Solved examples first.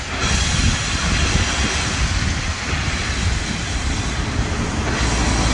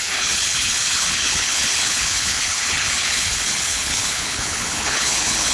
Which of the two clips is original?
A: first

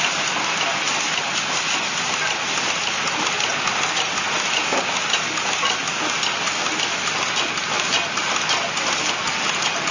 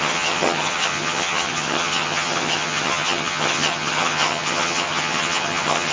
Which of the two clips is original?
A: first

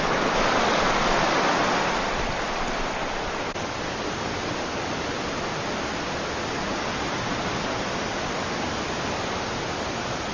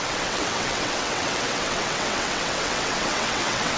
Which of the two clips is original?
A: first